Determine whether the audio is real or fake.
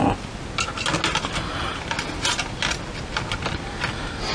real